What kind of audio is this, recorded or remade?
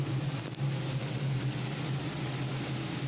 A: recorded